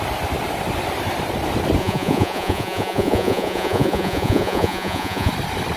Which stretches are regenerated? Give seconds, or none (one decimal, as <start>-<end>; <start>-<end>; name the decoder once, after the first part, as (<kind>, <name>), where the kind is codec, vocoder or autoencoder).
1.8-5.3 (vocoder, Vocos)